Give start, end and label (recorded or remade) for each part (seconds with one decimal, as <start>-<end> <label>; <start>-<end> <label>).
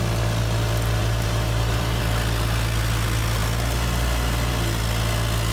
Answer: 0.0-1.0 recorded; 1.0-2.0 remade; 2.0-5.5 recorded